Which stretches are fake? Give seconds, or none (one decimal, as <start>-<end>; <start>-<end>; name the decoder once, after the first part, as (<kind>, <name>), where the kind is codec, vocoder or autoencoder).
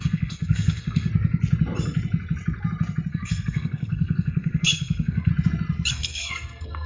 0.0-1.1 (codec, SNAC); 3.1-5.3; 5.9-6.9